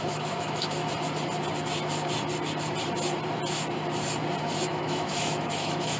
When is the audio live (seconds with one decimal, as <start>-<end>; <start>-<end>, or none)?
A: 0.8-4.4

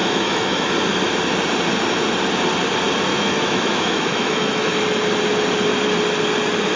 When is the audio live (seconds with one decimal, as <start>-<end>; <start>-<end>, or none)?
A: 0.7-3.1; 4.8-6.8

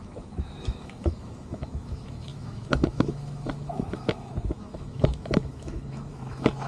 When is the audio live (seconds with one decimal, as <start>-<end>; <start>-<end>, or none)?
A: none